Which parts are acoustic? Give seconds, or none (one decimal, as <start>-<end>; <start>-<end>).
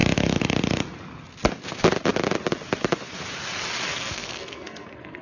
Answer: 0.0-3.9